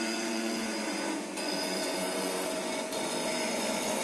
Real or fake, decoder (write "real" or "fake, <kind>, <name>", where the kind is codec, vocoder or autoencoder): fake, vocoder, Vocos